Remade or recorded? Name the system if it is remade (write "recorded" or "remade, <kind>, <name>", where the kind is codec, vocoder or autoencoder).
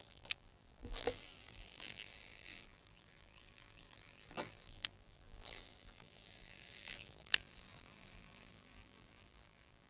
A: remade, vocoder, BigVGAN v2